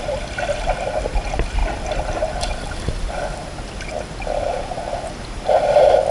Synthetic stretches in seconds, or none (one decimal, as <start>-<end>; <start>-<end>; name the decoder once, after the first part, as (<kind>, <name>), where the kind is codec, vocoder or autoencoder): none